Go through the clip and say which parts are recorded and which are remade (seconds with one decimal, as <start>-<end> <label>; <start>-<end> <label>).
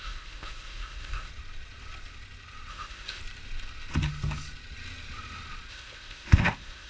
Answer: 0.0-1.3 remade; 1.3-2.7 recorded; 2.7-3.2 remade; 3.2-5.7 recorded; 5.7-6.9 remade